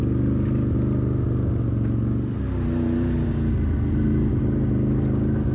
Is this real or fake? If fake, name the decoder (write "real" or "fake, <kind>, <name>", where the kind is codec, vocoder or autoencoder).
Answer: real